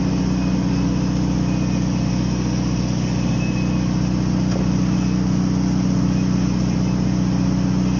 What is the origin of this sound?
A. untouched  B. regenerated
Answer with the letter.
A